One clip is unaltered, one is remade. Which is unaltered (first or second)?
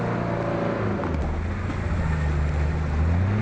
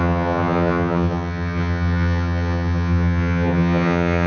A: first